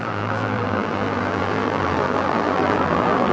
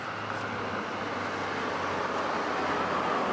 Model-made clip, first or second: first